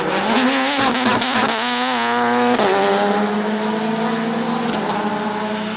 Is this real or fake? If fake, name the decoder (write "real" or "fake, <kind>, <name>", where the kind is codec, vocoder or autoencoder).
real